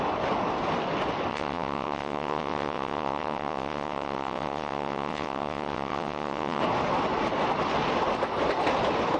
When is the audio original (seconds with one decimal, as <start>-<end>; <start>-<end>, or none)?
0.0-1.3; 6.6-9.2